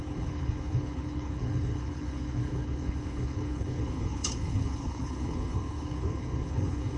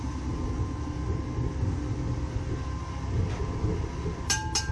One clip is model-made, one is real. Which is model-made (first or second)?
first